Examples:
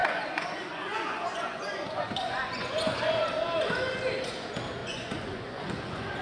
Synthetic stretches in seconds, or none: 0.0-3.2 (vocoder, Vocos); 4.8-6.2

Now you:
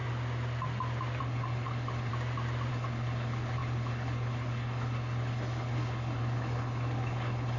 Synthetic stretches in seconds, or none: 1.2-2.1 (codec, HILCodec); 2.7-7.6